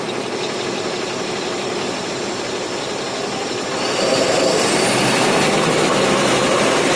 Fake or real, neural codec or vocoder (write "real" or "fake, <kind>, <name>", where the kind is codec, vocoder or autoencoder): fake, vocoder, BigVGAN v2